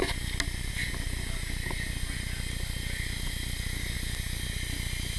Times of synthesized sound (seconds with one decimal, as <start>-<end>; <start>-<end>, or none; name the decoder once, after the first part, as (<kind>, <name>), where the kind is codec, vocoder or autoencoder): none